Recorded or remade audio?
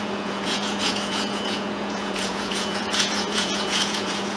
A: remade